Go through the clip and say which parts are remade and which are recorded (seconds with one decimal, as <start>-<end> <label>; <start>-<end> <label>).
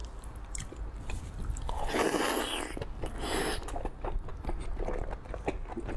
0.0-4.3 recorded; 4.3-4.9 remade; 4.9-6.0 recorded